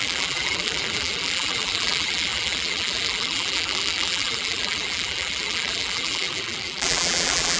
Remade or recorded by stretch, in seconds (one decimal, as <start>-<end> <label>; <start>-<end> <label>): 0.0-7.6 remade